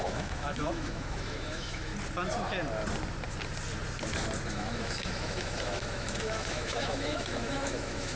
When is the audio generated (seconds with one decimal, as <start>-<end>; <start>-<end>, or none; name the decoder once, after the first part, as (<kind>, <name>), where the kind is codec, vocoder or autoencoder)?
0.0-1.9 (autoencoder, DAC-VAE); 4.5-8.2